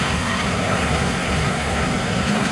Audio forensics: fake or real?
fake